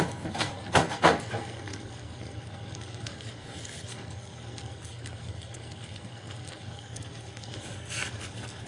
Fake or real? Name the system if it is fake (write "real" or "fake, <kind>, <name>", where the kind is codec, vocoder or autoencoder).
fake, codec, SNAC